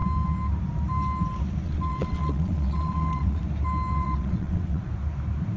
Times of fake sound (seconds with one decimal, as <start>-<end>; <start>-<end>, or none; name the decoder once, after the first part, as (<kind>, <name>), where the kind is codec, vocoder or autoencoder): 1.6-3.4 (vocoder, WaveNeXt); 3.9-4.9

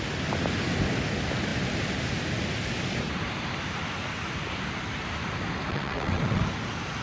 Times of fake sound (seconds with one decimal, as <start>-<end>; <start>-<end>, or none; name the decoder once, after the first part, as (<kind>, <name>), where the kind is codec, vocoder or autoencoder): 5.7-6.4 (vocoder, WaveNeXt)